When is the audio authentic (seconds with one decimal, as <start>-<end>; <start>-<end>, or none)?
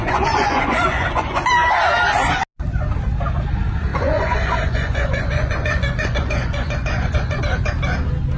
1.5-3.9; 7.4-8.4